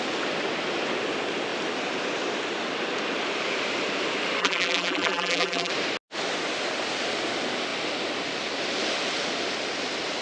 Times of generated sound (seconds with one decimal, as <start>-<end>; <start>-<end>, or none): 4.4-5.7